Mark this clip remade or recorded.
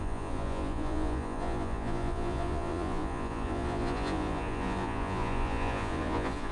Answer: remade